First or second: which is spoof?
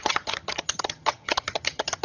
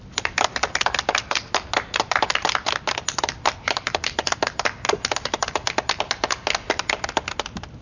first